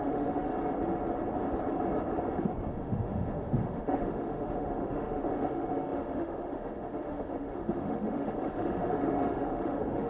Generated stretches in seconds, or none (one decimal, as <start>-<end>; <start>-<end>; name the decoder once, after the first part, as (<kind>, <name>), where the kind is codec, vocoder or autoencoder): 0.0-0.5 (autoencoder, DAC-VAE); 2.7-10.1